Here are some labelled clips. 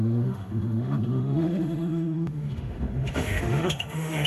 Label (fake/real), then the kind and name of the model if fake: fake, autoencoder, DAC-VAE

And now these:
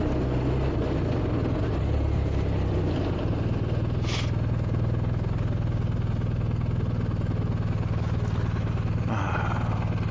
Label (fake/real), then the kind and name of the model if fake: real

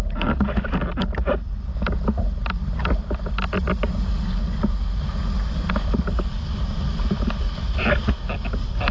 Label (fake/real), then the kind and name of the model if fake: real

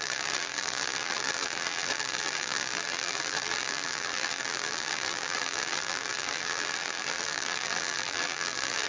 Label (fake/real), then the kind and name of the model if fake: fake, vocoder, BigVGAN v2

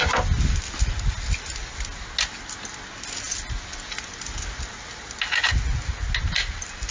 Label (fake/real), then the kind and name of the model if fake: real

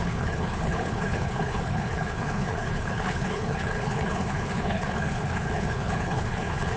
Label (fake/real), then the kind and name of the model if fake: fake, codec, HILCodec